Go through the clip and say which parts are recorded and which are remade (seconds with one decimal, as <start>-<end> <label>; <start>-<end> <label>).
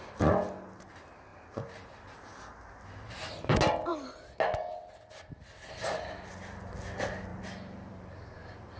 0.0-8.8 recorded